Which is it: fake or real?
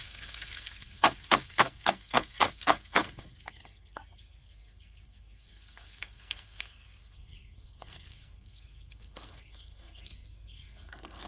fake